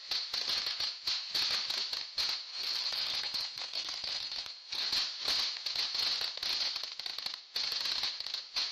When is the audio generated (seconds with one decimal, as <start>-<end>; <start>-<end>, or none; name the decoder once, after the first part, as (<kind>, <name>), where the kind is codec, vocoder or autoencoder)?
2.5-4.9 (codec, SNAC)